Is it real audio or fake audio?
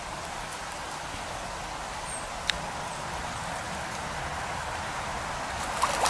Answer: real